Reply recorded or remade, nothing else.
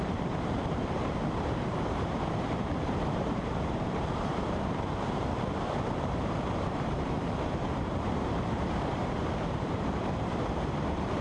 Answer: remade